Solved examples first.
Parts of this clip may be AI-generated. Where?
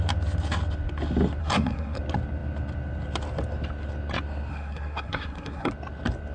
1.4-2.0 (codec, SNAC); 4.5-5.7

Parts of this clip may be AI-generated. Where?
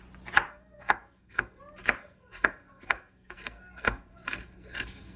0.5-1.6 (codec, SNAC); 2.0-5.2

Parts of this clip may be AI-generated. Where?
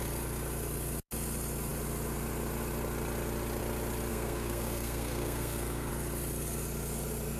4.1-5.9 (codec, SNAC)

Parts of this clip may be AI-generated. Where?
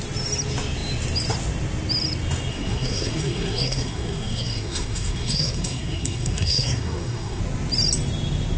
2.5-7.4 (codec, SNAC)